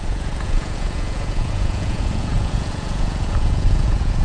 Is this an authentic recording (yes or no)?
no